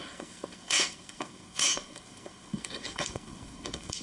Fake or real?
fake